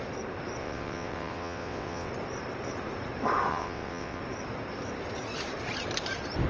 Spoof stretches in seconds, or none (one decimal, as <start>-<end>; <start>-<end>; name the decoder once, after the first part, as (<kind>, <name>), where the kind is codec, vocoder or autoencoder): 0.6-2.1 (vocoder, WaveNeXt); 3.5-4.2